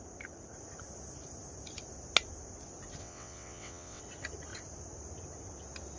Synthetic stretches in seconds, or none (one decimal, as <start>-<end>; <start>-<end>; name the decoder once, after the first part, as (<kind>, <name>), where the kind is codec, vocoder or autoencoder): 3.0-4.0 (vocoder, WaveNeXt)